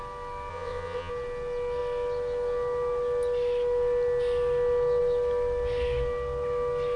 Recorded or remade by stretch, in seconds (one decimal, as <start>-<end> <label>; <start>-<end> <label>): 0.0-0.5 recorded; 0.5-1.1 remade; 1.1-7.0 recorded